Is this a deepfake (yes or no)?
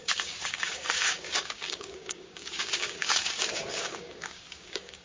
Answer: yes